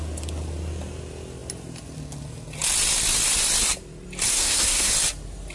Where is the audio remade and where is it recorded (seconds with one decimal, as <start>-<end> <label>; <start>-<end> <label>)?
0.0-4.3 recorded; 4.3-4.9 remade; 4.9-5.5 recorded